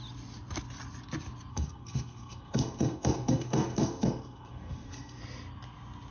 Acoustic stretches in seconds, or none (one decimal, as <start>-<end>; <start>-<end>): 0.0-1.5; 5.2-6.1